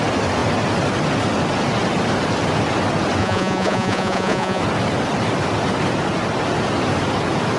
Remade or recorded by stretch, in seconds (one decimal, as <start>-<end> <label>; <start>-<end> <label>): 0.0-3.2 recorded; 3.2-4.6 remade; 4.6-7.6 recorded